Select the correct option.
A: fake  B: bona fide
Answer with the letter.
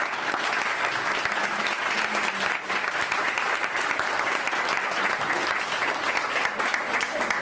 B